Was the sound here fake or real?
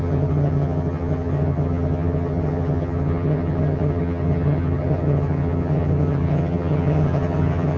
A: fake